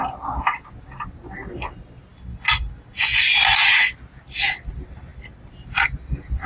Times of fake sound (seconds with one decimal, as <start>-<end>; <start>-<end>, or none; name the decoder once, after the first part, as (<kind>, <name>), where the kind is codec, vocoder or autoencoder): none